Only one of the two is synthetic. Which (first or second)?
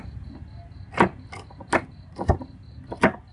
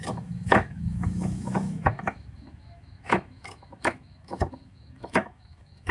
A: second